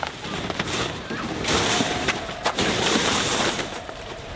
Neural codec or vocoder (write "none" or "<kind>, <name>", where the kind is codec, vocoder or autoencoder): vocoder, BigVGAN v2